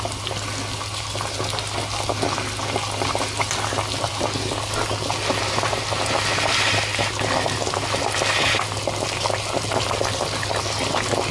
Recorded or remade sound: recorded